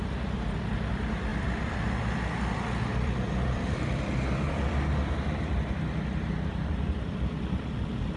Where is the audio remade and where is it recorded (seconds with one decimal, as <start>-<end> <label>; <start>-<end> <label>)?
0.0-1.3 recorded; 1.3-2.2 remade; 2.2-2.9 recorded; 2.9-7.7 remade; 7.7-8.2 recorded